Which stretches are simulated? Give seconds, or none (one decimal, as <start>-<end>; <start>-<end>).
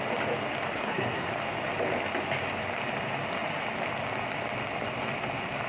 0.7-1.3